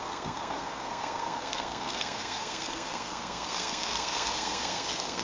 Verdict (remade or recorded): remade